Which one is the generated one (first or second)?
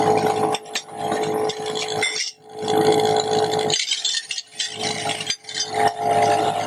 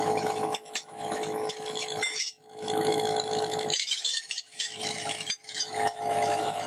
second